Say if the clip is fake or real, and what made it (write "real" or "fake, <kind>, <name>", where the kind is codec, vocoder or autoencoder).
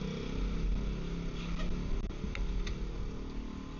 real